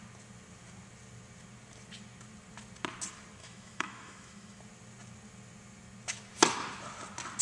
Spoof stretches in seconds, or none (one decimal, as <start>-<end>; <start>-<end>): 3.4-4.6